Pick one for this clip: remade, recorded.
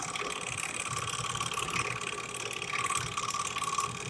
recorded